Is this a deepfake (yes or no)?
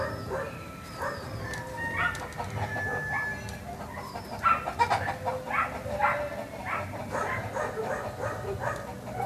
no